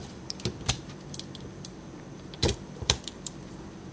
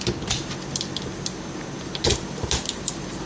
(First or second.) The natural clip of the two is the second